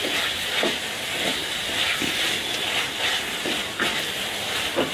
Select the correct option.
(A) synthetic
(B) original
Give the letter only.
A